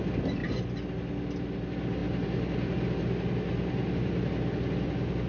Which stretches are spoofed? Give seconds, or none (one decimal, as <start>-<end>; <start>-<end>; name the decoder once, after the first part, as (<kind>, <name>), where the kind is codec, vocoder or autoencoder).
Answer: none